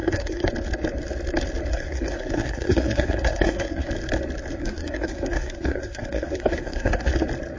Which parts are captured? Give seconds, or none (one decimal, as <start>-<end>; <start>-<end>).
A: 0.5-1.7; 3.9-4.6; 7.1-7.6